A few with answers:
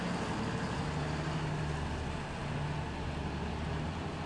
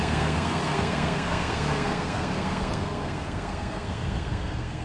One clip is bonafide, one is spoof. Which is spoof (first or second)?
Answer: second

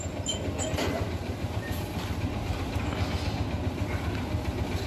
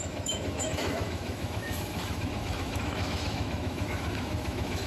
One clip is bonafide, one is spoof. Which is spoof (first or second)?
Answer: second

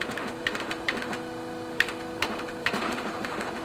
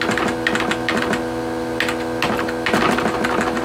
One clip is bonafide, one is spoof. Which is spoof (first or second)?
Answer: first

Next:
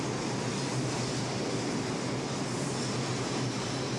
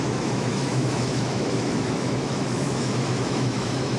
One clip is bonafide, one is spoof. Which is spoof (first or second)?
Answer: second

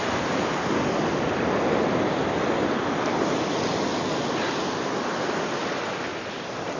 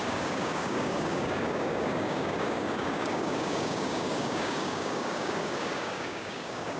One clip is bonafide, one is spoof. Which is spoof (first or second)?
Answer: second